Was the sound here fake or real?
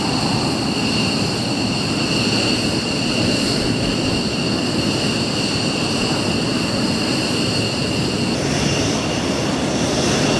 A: fake